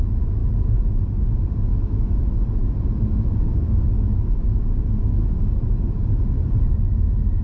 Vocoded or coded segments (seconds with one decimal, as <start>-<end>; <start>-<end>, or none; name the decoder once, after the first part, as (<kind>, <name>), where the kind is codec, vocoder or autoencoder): 1.7-2.2 (autoencoder, DAC-VAE); 2.6-4.6; 5.0-5.8